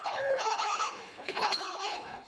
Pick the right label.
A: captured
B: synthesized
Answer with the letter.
B